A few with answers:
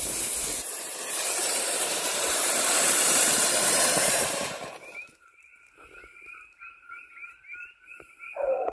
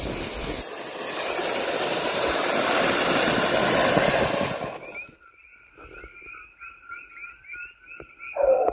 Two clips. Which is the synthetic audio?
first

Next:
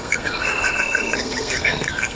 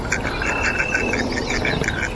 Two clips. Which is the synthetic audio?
first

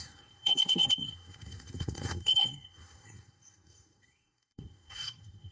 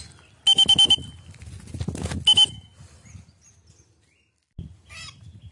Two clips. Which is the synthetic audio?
first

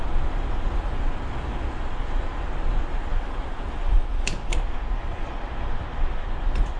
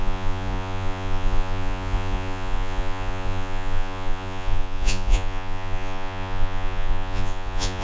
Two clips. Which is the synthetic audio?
second